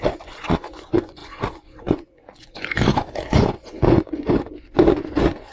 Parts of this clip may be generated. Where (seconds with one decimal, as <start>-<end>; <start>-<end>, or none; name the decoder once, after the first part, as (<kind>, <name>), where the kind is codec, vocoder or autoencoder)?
0.0-5.5 (vocoder, Vocos)

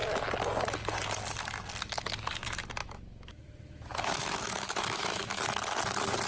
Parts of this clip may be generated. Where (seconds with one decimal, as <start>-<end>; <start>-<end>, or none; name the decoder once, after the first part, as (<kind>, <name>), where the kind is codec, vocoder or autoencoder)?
2.8-5.4 (autoencoder, DAC-VAE)

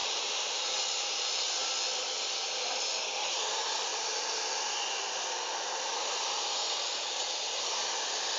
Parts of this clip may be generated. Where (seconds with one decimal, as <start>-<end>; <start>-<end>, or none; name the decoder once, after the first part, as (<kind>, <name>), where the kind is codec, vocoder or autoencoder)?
0.0-1.2 (vocoder, BigVGAN v2); 1.6-3.5; 3.9-7.2

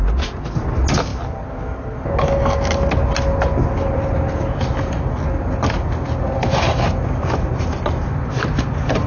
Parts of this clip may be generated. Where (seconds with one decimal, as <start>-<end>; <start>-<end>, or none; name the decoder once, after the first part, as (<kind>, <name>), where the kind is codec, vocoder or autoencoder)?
none